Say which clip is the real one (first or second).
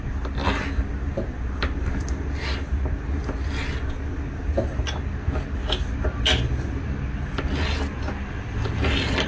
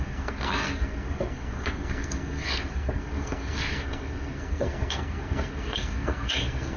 first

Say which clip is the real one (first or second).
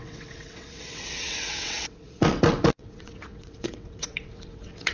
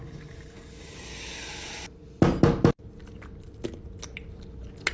second